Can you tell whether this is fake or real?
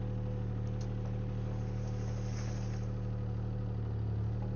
real